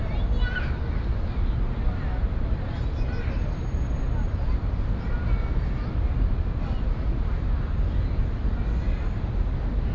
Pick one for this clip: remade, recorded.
recorded